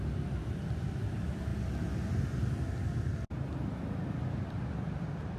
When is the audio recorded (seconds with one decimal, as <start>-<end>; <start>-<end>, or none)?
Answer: 1.5-4.2